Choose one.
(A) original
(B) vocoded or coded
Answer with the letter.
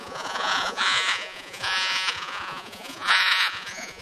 B